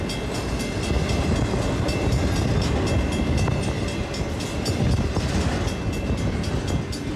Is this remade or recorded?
recorded